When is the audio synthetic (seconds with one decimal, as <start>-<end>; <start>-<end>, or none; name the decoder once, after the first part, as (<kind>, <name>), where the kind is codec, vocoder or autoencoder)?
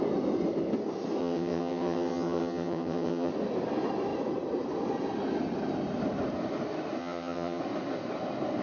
1.2-3.3 (vocoder, HiFi-GAN); 7.0-7.6